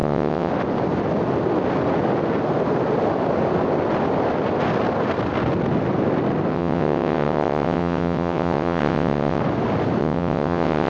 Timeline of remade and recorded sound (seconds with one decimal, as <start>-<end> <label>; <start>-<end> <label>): 0.0-0.5 remade; 0.5-6.5 recorded; 6.5-9.4 remade; 9.4-10.0 recorded; 10.0-10.9 remade